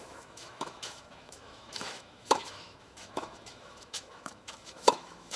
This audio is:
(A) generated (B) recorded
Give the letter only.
A